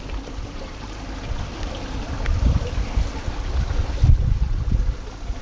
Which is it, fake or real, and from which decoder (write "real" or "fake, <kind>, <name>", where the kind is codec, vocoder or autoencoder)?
real